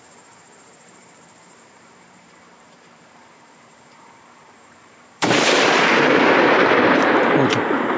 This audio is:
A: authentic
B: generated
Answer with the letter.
B